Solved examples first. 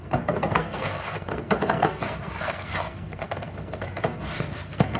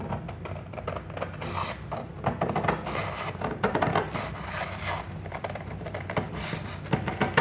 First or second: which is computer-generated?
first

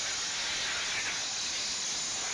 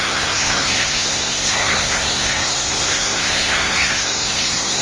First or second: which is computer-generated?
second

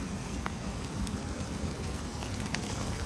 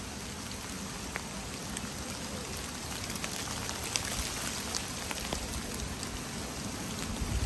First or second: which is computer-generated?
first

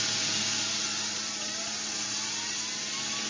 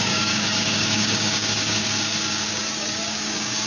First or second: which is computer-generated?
second